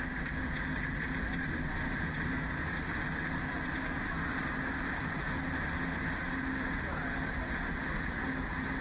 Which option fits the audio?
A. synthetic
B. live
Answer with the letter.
B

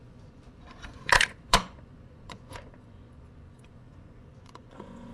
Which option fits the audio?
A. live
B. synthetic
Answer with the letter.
B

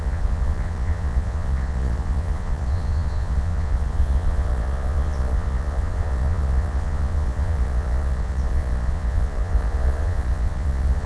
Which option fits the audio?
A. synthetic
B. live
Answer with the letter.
A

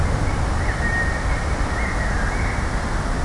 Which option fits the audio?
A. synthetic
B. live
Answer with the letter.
B